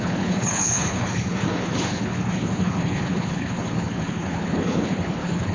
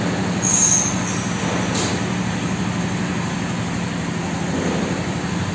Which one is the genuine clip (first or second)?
second